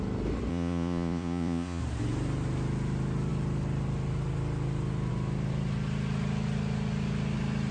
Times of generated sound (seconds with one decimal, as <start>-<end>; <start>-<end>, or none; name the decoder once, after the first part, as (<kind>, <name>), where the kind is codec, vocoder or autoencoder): 0.5-1.8 (vocoder, Vocos)